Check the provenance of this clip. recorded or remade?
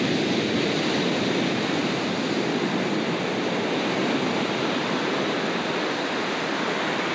remade